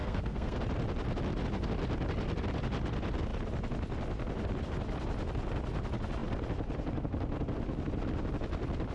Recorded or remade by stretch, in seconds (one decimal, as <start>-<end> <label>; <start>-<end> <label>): 0.0-0.6 remade; 0.6-8.9 recorded